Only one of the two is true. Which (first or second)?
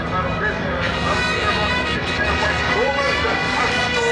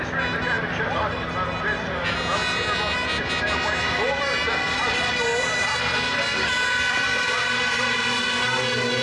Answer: second